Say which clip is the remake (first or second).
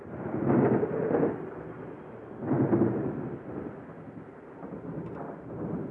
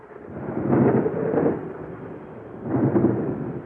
second